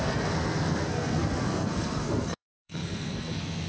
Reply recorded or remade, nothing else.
remade